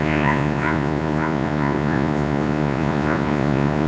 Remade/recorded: remade